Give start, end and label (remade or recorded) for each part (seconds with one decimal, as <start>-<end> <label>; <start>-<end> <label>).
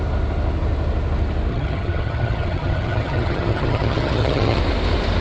0.0-1.5 recorded; 1.5-4.6 remade; 4.6-5.2 recorded